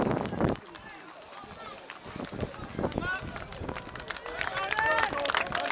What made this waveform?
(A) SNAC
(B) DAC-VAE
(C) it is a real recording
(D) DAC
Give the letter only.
C